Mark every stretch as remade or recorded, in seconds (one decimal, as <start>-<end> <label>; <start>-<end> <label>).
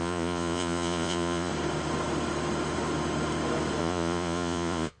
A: 0.0-1.5 remade; 1.5-3.8 recorded; 3.8-5.0 remade